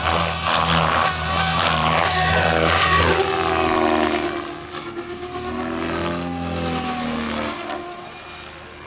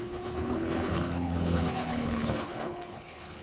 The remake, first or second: second